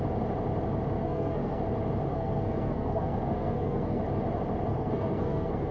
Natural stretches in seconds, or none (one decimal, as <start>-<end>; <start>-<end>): 0.0-1.0; 1.6-2.1; 4.0-4.7

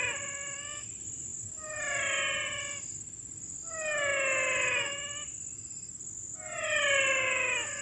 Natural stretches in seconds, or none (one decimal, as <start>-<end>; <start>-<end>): 0.0-7.8

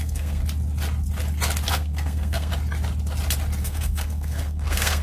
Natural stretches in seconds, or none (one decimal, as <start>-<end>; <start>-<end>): 0.4-1.7; 2.5-3.6

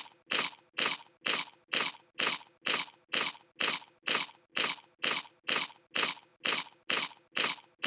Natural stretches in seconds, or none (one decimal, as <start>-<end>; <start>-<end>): 0.0-7.9